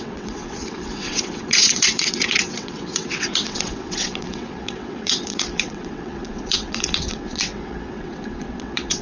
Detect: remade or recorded remade